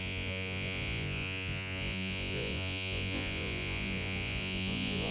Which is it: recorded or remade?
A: remade